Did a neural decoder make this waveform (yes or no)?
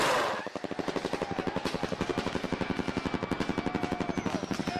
no